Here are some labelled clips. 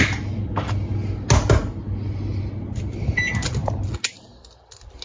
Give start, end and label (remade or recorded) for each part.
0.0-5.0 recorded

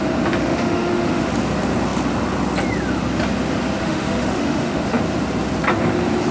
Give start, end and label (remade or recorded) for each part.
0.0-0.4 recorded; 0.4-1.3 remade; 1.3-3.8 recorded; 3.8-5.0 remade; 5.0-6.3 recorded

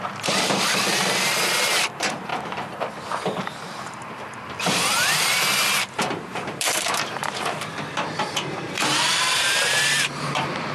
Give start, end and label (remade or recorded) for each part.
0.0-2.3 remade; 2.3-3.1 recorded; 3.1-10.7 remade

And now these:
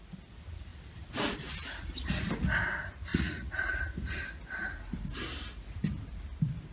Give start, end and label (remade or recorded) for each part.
0.0-3.1 recorded; 3.1-3.6 remade; 3.6-6.7 recorded

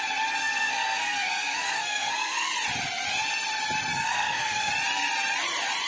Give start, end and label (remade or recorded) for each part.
0.0-0.4 recorded; 0.4-2.5 remade; 2.5-3.9 recorded; 3.9-4.7 remade; 4.7-5.9 recorded